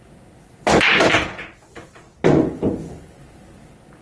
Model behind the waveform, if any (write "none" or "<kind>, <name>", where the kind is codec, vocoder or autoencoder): none